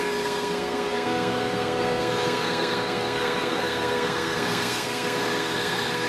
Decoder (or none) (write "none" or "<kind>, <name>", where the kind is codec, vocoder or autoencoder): codec, SNAC